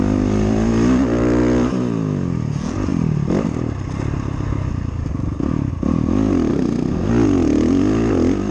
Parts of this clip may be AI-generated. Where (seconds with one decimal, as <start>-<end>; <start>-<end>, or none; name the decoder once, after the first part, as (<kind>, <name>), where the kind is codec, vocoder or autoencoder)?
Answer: 6.5-7.1 (codec, SNAC)